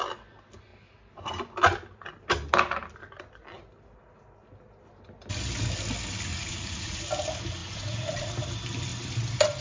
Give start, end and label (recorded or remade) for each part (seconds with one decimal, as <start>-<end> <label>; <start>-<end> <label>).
0.0-6.3 recorded; 6.3-7.0 remade; 7.0-7.6 recorded; 7.6-8.3 remade; 8.3-9.6 recorded